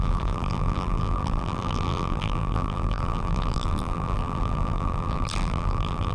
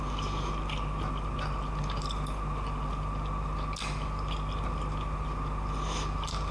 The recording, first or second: second